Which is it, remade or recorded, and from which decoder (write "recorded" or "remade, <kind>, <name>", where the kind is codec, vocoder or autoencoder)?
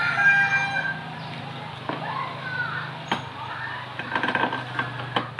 recorded